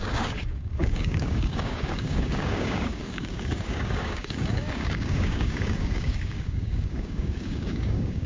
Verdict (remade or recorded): remade